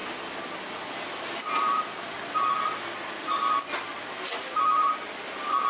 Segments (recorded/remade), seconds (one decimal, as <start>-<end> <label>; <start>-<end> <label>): 0.0-5.7 recorded